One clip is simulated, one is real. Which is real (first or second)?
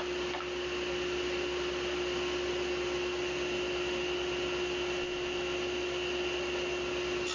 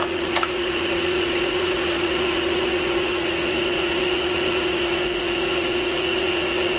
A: first